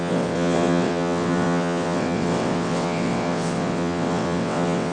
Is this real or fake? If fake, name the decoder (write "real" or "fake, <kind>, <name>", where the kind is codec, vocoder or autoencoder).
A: fake, vocoder, WaveNeXt